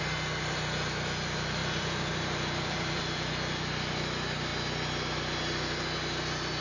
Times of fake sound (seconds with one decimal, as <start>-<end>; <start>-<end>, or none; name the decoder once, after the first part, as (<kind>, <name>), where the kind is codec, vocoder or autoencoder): 1.6-3.0 (vocoder, BigVGAN v2)